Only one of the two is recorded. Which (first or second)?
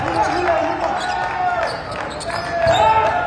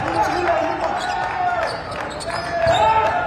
first